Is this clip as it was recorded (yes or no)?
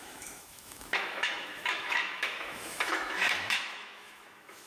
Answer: no